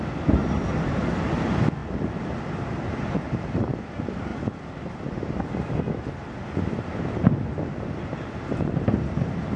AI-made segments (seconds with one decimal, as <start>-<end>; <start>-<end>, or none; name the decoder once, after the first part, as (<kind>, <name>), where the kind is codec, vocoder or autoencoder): none